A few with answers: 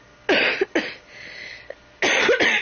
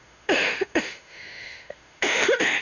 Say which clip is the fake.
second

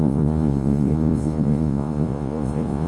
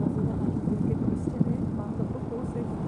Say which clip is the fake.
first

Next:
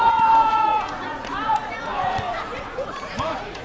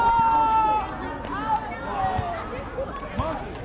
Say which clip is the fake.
first